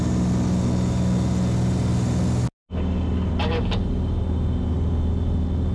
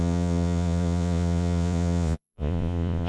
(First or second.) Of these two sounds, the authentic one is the first